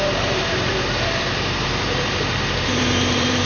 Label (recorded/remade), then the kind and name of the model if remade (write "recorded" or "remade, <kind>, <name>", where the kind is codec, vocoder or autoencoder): remade, vocoder, BigVGAN v2